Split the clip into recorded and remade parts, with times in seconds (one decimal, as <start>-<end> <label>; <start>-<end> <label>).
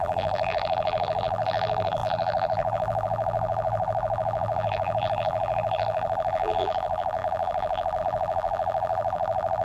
0.0-9.6 remade